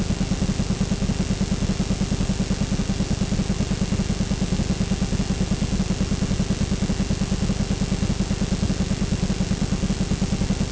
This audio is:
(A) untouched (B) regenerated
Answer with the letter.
A